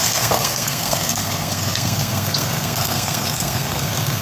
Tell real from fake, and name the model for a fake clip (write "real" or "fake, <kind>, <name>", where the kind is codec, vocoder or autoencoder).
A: fake, codec, SNAC